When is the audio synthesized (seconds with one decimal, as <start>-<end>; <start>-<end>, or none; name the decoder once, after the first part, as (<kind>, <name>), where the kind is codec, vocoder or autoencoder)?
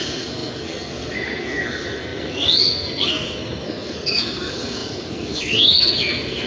0.0-6.5 (codec, SNAC)